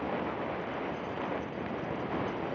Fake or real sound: real